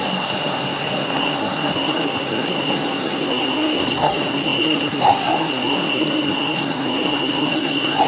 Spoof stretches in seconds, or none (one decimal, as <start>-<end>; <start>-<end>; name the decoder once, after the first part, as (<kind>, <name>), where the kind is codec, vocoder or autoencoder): 0.0-8.1 (codec, SNAC)